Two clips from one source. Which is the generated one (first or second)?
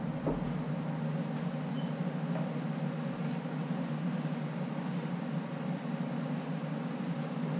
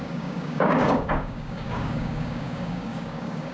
second